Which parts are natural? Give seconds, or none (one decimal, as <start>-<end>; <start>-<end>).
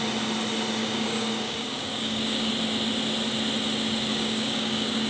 0.0-0.8; 2.5-4.1